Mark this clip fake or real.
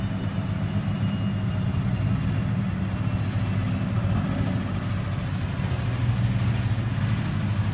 real